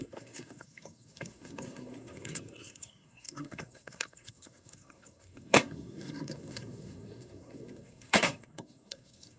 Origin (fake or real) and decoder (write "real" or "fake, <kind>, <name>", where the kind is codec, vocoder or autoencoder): fake, codec, SNAC